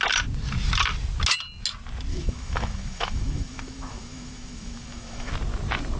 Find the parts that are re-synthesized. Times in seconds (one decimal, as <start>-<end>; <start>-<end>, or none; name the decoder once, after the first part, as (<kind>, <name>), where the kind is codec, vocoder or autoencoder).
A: 2.1-5.3 (autoencoder, DAC-VAE)